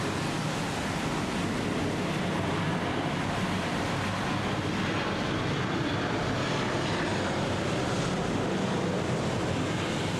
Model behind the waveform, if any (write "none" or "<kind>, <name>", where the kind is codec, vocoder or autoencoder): none